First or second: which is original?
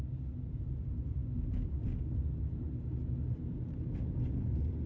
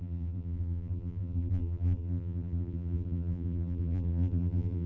first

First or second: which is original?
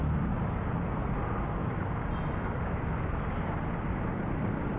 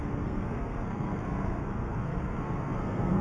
first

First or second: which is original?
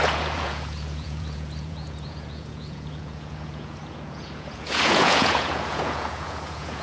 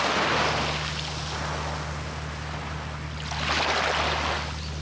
second